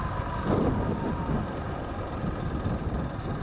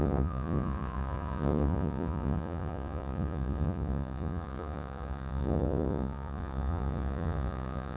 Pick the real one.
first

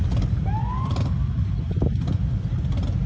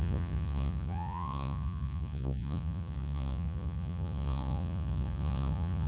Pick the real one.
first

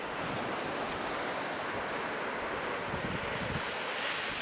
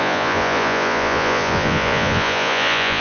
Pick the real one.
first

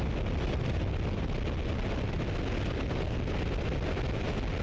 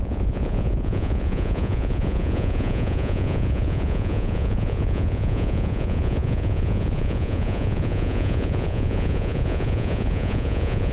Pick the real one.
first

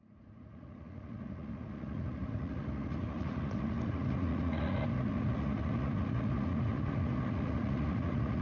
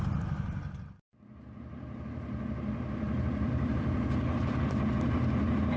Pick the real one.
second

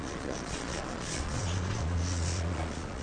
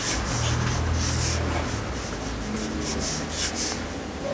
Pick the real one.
second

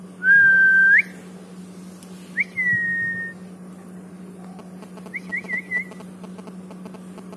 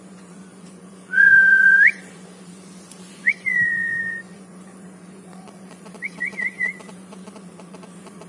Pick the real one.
first